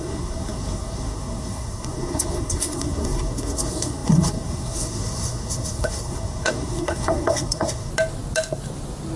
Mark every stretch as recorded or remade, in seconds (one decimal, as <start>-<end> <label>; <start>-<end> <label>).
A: 0.0-7.9 remade; 7.9-9.2 recorded